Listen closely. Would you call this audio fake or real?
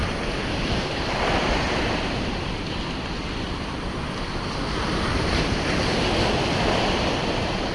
real